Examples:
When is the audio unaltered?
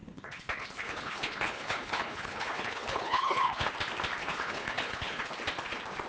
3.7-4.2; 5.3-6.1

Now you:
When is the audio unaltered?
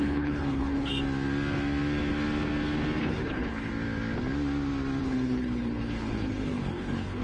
0.9-3.0; 3.7-5.0